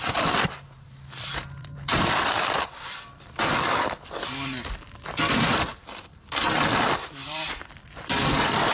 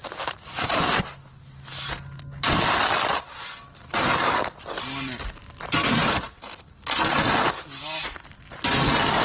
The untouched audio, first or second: second